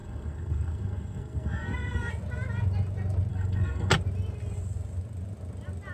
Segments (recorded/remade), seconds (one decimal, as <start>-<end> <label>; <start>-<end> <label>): 0.0-2.1 remade; 2.1-3.3 recorded; 3.3-3.9 remade; 3.9-5.9 recorded